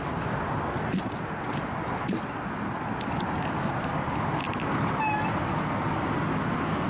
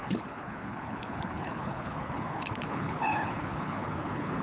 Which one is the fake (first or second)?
second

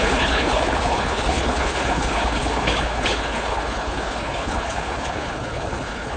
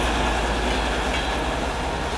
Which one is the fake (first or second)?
first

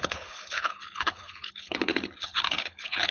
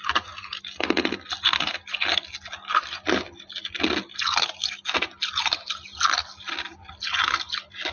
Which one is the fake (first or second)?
first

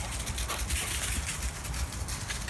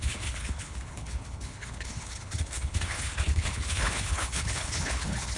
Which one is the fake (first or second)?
second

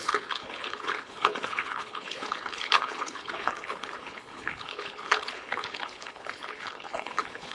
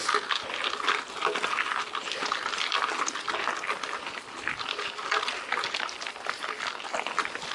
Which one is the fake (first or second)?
first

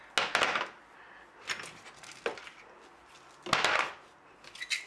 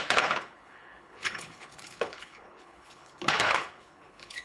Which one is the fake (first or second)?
second